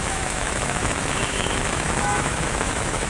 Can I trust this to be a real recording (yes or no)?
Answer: no